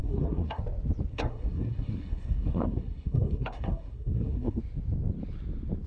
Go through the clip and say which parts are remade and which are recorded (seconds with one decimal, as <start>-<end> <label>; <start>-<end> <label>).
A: 0.0-0.6 remade; 0.6-1.1 recorded; 1.1-4.6 remade; 4.6-5.9 recorded